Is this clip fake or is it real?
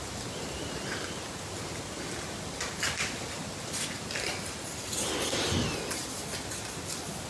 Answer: real